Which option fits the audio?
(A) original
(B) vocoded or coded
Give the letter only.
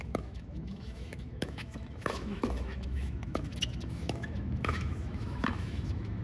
B